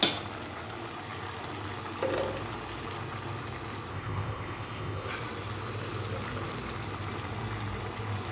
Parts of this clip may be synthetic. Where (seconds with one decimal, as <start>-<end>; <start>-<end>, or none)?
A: 3.9-5.1